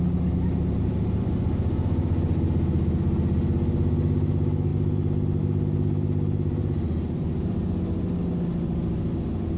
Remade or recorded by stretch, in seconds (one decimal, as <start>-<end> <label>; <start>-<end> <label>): 0.0-9.6 recorded